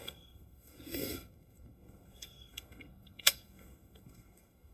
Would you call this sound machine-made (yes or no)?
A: yes